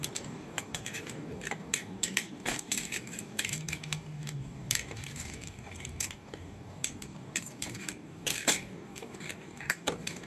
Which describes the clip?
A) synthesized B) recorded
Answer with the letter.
A